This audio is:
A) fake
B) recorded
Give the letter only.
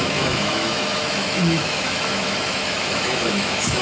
A